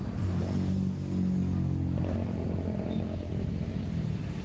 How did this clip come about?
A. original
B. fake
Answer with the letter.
A